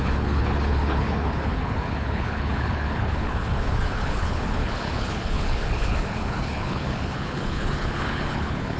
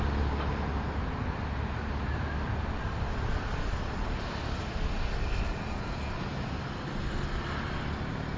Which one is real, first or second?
second